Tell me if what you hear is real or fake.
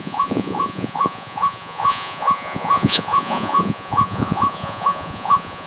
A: fake